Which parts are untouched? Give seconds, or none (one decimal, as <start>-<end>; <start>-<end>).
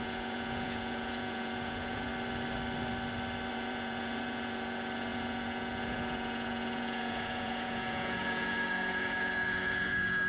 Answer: 2.1-3.5